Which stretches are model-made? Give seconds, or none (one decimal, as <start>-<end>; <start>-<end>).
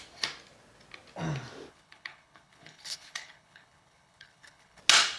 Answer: 1.7-4.8